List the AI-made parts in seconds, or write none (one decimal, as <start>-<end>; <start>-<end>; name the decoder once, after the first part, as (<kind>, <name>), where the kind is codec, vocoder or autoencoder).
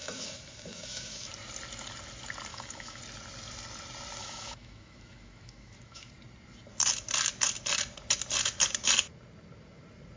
0.0-1.3 (autoencoder, DAC-VAE); 2.5-3.0; 4.2-6.1